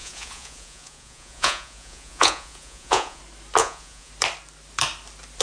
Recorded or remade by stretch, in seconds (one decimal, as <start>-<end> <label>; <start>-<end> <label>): 0.0-3.2 remade; 3.2-3.6 recorded; 3.6-4.1 remade; 4.1-5.4 recorded